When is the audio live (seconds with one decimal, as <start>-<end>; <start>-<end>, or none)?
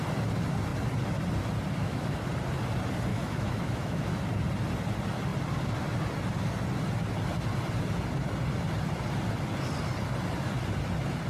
0.0-1.8; 2.3-3.1; 4.2-11.3